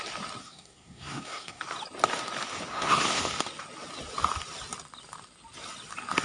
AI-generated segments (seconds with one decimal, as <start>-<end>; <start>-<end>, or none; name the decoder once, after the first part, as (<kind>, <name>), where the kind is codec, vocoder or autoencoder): 0.4-1.6 (codec, SNAC); 2.7-3.2